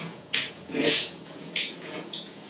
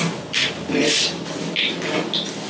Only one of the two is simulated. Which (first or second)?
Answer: first